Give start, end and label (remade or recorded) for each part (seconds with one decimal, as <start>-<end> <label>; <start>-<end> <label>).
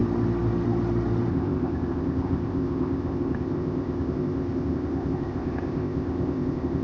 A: 0.0-1.3 recorded; 1.3-6.8 remade